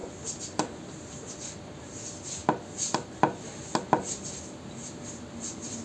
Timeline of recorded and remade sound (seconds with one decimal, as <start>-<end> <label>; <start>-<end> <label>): 0.0-5.8 recorded